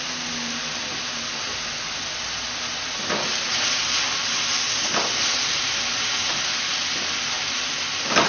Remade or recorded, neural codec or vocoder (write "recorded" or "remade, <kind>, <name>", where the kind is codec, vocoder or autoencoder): recorded